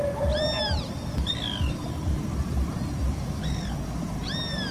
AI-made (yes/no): yes